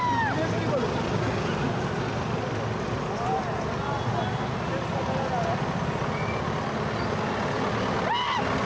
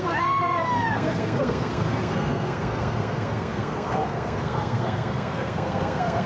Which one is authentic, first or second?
first